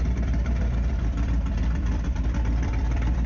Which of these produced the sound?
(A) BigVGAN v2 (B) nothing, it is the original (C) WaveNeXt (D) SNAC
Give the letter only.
A